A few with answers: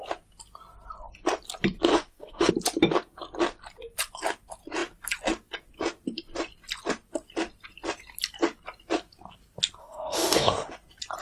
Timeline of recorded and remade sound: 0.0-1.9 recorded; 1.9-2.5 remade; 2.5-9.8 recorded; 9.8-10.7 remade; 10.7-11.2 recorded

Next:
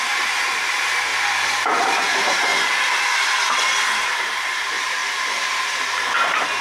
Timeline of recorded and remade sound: 0.0-1.1 remade; 1.1-1.8 recorded; 1.8-2.5 remade; 2.5-4.2 recorded; 4.2-5.0 remade; 5.0-6.0 recorded; 6.0-6.6 remade

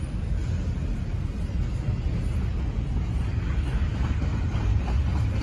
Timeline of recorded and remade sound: 0.0-5.4 recorded